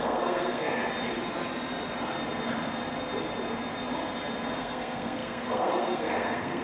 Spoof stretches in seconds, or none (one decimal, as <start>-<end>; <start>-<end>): 0.0-0.8; 4.6-6.6